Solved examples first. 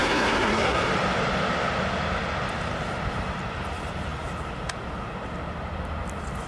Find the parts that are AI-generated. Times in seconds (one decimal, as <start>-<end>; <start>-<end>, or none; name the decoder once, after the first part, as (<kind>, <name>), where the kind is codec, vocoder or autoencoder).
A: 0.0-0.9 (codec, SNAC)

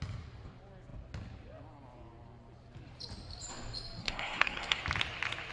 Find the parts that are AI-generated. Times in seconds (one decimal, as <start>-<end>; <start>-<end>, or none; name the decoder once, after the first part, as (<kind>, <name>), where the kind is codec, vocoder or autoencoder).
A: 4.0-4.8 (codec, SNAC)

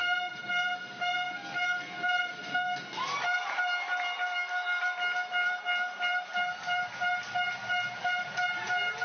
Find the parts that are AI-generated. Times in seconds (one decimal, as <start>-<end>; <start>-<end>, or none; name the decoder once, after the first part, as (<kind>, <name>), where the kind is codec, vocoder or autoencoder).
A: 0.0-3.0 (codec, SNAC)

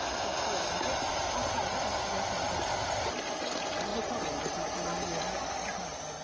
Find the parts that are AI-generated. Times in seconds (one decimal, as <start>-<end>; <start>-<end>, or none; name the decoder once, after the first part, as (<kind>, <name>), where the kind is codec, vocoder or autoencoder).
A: none

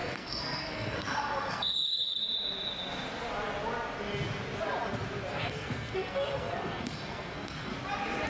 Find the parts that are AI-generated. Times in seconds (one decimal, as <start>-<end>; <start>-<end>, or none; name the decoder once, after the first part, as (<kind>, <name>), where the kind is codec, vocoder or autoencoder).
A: 0.0-2.2 (codec, SNAC); 5.3-7.7

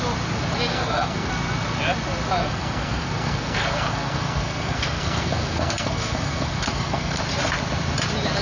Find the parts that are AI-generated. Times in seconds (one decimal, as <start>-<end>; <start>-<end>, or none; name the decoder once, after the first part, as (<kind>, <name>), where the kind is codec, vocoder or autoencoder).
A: 0.7-1.3 (codec, SNAC); 2.4-7.2

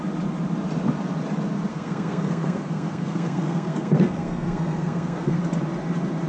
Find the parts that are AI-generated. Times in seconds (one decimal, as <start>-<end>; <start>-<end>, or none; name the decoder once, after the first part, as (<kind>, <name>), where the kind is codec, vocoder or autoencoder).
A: 1.7-5.4 (codec, SNAC)